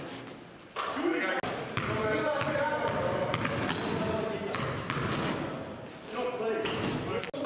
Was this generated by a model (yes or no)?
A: no